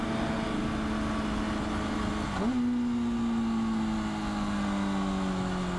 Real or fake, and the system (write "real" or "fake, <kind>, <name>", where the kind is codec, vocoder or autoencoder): real